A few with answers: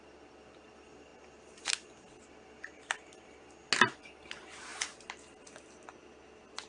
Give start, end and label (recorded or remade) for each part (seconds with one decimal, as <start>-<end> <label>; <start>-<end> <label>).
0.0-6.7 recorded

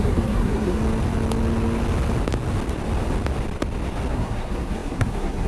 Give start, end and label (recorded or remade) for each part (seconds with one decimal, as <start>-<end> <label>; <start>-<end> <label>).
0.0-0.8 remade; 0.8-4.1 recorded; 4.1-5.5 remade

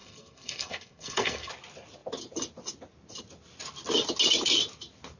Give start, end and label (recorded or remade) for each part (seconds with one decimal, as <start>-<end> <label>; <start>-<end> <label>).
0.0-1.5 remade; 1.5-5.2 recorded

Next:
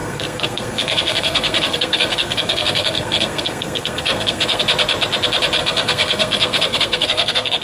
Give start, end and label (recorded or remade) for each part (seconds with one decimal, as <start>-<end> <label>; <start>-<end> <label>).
0.0-4.6 remade; 4.6-5.6 recorded; 5.6-7.6 remade

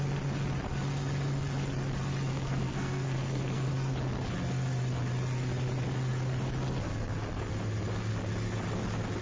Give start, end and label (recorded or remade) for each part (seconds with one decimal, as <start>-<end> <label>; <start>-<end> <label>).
0.0-2.3 recorded; 2.3-3.7 remade; 3.7-9.2 recorded